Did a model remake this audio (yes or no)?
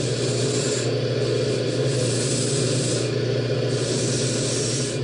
no